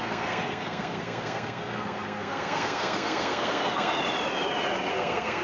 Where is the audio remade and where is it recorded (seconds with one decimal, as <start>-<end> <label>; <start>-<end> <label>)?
0.0-4.0 remade; 4.0-4.9 recorded; 4.9-5.4 remade